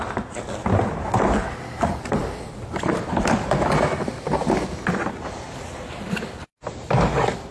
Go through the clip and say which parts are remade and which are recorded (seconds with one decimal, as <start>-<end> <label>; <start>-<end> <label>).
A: 0.0-7.5 recorded